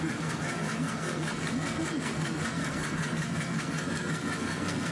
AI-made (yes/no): yes